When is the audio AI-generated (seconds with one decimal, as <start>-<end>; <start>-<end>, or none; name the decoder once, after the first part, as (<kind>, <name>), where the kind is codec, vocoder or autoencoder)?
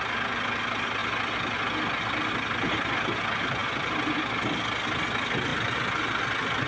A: none